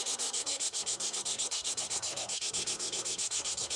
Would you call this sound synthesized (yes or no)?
yes